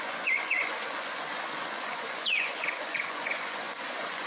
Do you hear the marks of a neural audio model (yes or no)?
yes